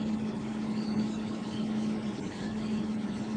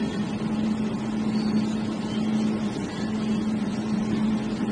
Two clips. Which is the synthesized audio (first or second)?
first